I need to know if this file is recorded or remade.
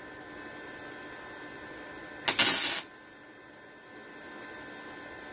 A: recorded